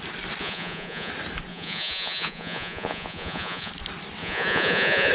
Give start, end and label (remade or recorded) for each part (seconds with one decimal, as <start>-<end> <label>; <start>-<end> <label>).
0.0-0.4 recorded; 0.4-1.1 remade; 1.1-1.5 recorded; 1.5-3.7 remade; 3.7-4.2 recorded; 4.2-5.1 remade